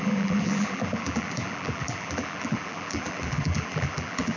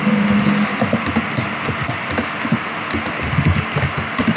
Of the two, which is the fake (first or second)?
first